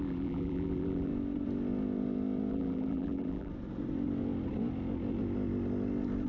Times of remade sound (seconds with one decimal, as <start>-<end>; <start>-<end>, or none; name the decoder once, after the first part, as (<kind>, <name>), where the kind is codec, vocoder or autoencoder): 0.0-1.1 (vocoder, BigVGAN v2); 2.5-3.5